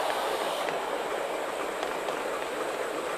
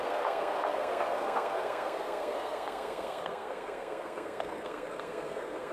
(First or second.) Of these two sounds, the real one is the first